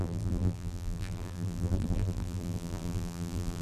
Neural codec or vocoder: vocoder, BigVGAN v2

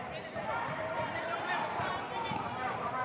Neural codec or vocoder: vocoder, BigVGAN v2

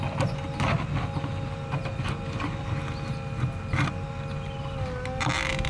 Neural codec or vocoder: none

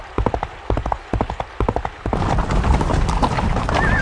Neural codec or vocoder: vocoder, BigVGAN v2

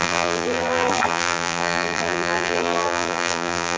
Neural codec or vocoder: vocoder, BigVGAN v2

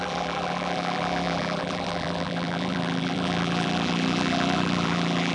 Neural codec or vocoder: vocoder, BigVGAN v2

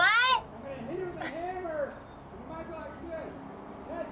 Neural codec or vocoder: none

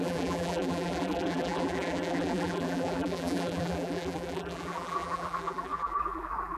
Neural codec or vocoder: vocoder, BigVGAN v2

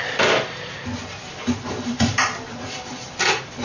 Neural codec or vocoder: vocoder, BigVGAN v2